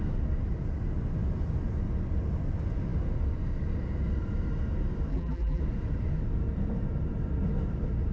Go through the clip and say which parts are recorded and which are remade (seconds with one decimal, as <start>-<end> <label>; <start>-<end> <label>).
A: 0.0-5.1 recorded; 5.1-5.6 remade; 5.6-8.1 recorded